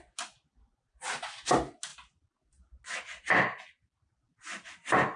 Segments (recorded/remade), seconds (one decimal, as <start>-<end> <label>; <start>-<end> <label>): 0.0-5.2 recorded